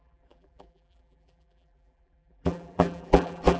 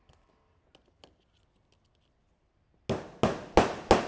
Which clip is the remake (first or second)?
first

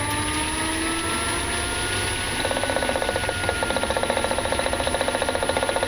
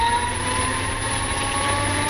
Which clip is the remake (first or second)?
second